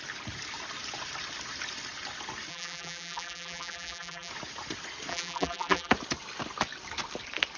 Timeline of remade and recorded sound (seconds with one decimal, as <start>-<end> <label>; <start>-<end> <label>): 0.0-2.5 recorded; 2.5-4.3 remade; 4.3-5.1 recorded; 5.1-5.9 remade; 5.9-7.6 recorded